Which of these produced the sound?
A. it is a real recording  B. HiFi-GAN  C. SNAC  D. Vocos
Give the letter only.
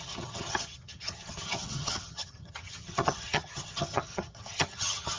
B